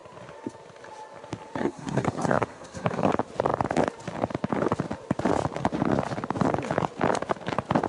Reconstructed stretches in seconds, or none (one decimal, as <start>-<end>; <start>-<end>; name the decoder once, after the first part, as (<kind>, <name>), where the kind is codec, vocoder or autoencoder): 1.6-3.1 (codec, SNAC)